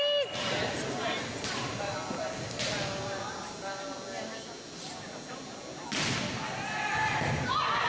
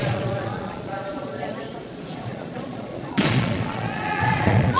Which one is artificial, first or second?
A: second